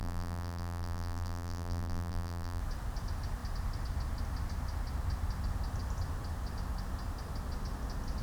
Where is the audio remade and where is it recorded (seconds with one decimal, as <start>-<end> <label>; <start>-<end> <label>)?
0.0-2.6 remade; 2.6-8.2 recorded